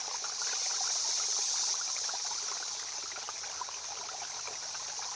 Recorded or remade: recorded